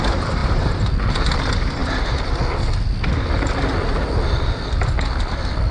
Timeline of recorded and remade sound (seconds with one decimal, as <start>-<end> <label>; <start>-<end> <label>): 0.0-0.4 recorded; 0.4-0.9 remade; 0.9-5.7 recorded